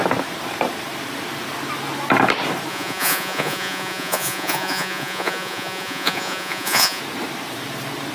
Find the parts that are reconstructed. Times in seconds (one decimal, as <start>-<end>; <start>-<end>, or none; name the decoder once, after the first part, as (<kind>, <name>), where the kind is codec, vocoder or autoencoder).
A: 2.7-7.0 (vocoder, Vocos)